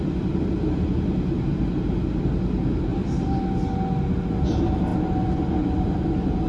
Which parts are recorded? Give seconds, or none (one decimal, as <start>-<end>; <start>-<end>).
0.0-2.9; 3.4-6.5